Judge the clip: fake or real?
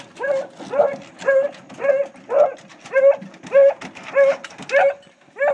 real